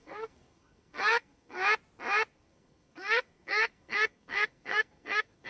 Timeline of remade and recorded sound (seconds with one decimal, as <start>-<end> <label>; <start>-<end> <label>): 0.0-1.6 remade; 1.6-2.3 recorded; 2.3-5.5 remade